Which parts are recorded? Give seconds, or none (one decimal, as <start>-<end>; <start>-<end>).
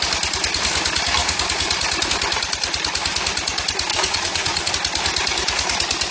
0.0-3.9; 4.7-6.1